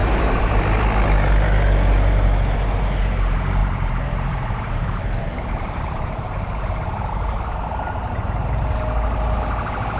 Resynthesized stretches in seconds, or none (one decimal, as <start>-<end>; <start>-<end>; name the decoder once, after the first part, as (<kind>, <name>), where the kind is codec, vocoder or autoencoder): 3.6-8.7 (vocoder, BigVGAN v2)